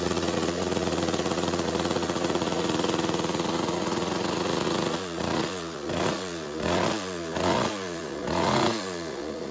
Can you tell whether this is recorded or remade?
remade